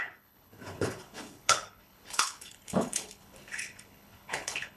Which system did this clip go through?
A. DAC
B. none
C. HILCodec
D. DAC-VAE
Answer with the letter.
C